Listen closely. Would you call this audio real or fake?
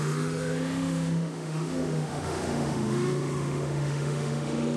fake